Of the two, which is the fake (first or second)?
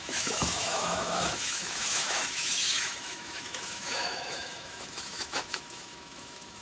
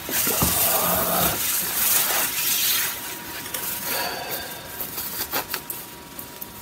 first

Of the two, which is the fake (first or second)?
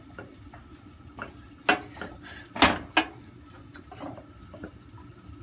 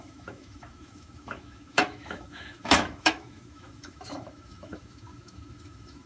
second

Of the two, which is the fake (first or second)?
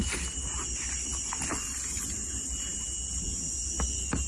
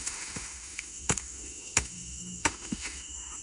second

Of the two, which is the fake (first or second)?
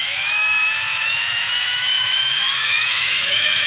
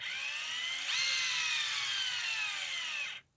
first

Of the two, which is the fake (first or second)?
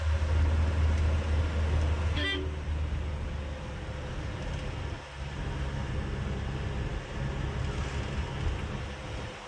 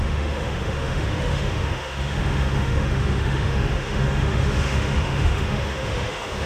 second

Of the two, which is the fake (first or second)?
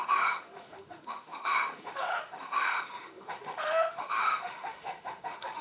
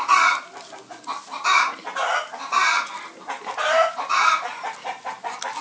first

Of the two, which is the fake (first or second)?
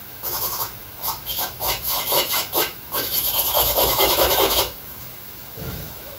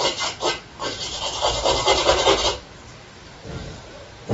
first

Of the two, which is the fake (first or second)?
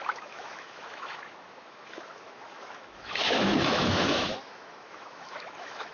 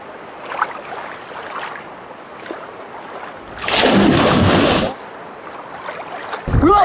first